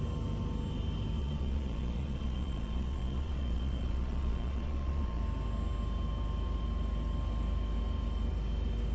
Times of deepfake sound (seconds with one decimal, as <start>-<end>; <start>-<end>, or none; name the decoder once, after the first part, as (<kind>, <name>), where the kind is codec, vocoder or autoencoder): 1.2-5.2 (vocoder, Vocos)